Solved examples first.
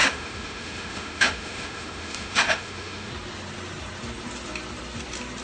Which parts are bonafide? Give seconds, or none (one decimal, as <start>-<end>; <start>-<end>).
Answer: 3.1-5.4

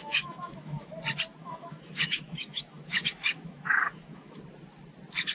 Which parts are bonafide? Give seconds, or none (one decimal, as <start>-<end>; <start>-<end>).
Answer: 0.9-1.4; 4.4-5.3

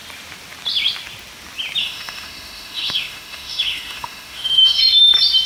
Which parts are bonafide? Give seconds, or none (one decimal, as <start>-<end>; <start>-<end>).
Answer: 0.0-1.8; 4.8-5.5

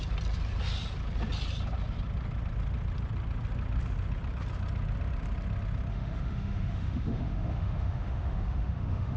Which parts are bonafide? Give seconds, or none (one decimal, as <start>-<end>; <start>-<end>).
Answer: 0.0-5.9

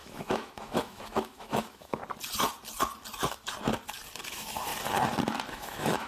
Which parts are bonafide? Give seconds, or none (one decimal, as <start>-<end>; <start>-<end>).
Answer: 2.0-4.3; 4.7-5.5

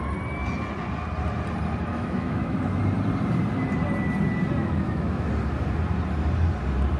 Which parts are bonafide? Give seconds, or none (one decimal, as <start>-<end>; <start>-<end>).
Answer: 0.0-1.9; 2.8-4.6; 5.3-7.0

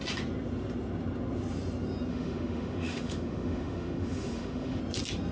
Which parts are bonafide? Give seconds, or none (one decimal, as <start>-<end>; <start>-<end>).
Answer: 0.0-2.1; 4.8-5.3

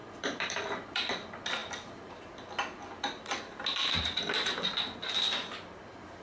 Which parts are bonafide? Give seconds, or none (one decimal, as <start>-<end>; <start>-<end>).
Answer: 0.0-6.2